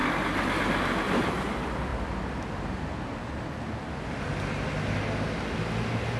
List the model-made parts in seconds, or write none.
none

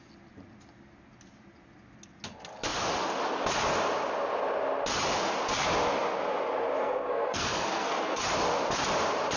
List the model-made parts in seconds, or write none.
6.8-8.2 (codec, SNAC)

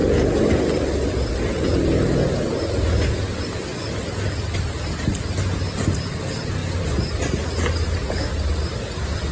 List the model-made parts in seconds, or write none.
none

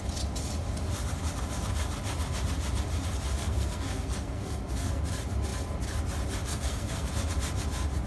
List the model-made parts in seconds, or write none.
3.4-5.0 (codec, SNAC); 6.5-7.1